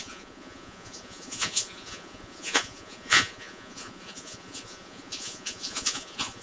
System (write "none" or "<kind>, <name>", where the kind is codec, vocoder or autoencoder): vocoder, Vocos